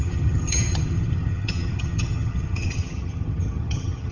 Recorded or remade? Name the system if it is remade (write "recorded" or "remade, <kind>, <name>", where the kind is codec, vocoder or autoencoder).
remade, vocoder, HiFi-GAN